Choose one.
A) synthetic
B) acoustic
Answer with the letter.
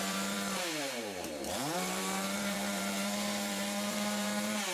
A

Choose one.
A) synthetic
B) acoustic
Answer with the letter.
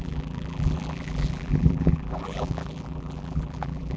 A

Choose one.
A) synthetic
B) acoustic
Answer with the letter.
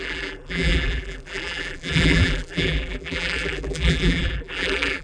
A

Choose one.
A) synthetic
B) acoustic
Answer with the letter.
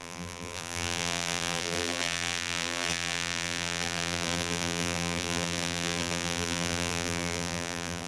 A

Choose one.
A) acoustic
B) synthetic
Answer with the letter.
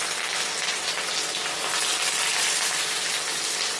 B